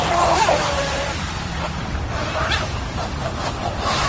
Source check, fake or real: fake